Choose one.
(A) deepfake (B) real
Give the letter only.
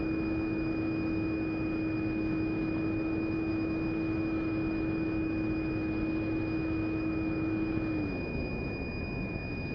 A